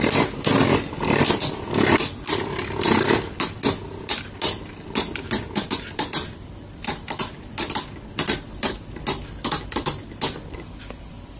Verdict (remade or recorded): recorded